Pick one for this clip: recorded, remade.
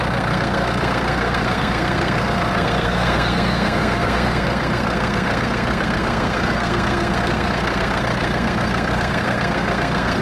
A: remade